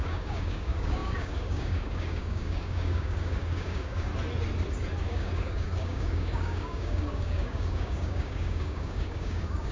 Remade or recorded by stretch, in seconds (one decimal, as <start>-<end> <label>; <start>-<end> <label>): 0.0-4.1 remade; 4.1-5.0 recorded; 5.0-9.7 remade

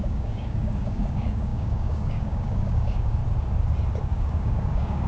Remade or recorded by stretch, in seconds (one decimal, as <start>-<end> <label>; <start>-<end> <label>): 0.0-3.2 remade; 3.2-4.0 recorded; 4.0-5.1 remade

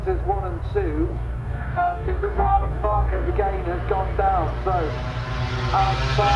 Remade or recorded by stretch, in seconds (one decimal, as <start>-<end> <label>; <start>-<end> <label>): 0.0-1.1 recorded; 1.1-3.3 remade; 3.3-6.4 recorded

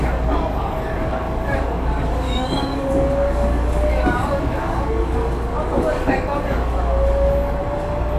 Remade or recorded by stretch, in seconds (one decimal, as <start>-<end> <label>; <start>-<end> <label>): 0.0-8.2 remade

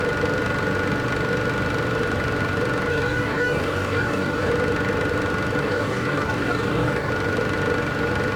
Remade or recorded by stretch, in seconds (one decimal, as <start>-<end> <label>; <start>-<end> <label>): 0.0-2.9 recorded; 2.9-4.5 remade; 4.5-5.6 recorded; 5.6-7.1 remade; 7.1-8.4 recorded

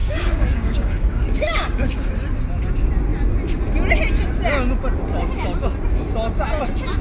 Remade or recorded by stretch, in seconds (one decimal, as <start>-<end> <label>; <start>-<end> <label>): 0.0-2.1 remade; 2.1-7.0 recorded

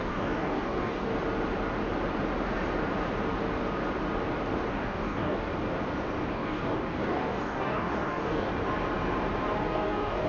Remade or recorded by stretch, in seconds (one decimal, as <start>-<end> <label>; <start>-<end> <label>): 0.0-1.1 remade; 1.1-4.7 recorded; 4.7-5.5 remade; 5.5-6.3 recorded; 6.3-8.5 remade; 8.5-9.6 recorded; 9.6-10.3 remade